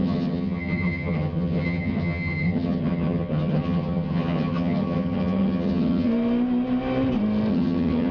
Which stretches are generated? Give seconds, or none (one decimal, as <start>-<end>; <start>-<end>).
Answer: 0.0-6.1; 7.5-8.1